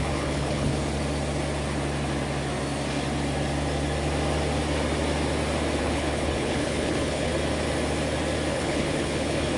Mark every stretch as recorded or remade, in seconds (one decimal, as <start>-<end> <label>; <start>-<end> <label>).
0.0-0.7 remade; 0.7-5.8 recorded; 5.8-7.3 remade; 7.3-8.5 recorded; 8.5-9.6 remade